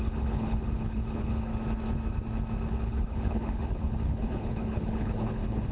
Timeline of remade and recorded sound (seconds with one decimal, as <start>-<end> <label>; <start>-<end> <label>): 0.0-1.5 remade; 1.5-2.8 recorded; 2.8-5.7 remade